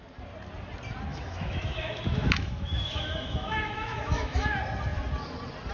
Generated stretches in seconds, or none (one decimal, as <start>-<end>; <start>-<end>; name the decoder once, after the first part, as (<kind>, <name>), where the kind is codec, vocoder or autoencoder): 1.1-4.5 (autoencoder, DAC-VAE)